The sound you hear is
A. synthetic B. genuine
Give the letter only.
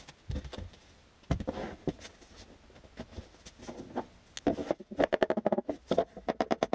B